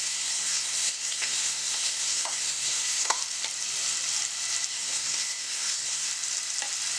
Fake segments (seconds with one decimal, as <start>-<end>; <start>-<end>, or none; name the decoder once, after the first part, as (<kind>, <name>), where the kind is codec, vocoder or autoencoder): 0.0-3.2 (codec, SNAC); 4.7-6.1

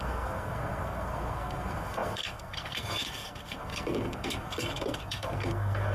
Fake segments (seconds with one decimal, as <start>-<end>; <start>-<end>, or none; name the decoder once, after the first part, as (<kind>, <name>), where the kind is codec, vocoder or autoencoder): 0.0-5.9 (codec, SNAC)

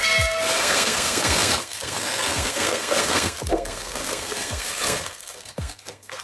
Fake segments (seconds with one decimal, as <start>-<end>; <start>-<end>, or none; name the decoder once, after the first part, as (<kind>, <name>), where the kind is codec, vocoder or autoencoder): 0.0-6.2 (codec, SNAC)

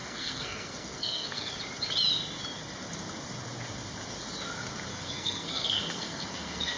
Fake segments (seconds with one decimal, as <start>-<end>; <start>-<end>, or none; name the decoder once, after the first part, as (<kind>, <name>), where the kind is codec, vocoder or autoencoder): 0.0-1.5 (codec, SNAC); 4.9-6.8